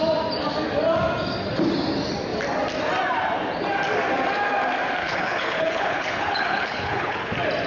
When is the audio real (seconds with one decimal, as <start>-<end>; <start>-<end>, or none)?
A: 0.0-5.0; 7.3-7.7